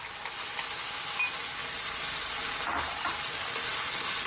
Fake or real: real